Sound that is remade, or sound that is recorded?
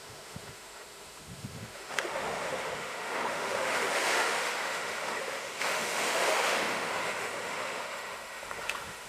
remade